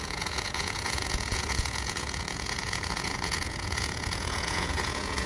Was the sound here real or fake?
fake